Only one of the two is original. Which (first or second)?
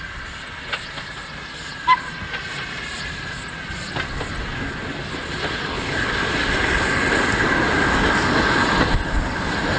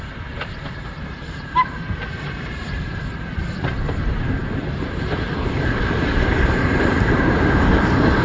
first